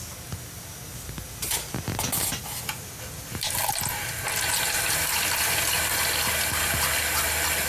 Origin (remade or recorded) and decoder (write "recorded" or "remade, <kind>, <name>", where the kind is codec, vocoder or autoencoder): recorded